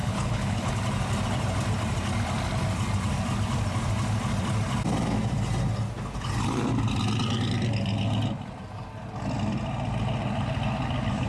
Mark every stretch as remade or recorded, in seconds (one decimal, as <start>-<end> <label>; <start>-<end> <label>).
0.0-0.7 remade; 0.7-11.3 recorded